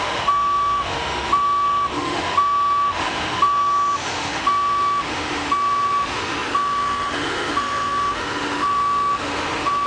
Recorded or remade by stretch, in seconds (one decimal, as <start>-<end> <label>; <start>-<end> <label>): 0.0-9.9 remade